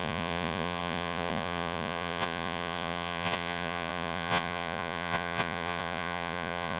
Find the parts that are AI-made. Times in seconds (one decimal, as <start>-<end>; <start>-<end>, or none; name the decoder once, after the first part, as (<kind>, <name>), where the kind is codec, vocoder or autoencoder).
0.0-6.8 (vocoder, Vocos)